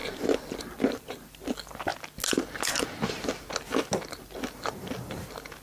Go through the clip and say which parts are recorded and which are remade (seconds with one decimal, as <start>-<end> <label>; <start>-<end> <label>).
0.0-0.6 recorded; 0.6-1.9 remade; 1.9-4.1 recorded; 4.1-5.6 remade